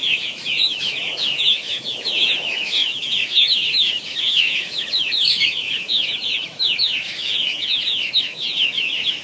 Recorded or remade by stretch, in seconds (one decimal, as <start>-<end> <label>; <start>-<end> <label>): 0.0-9.2 remade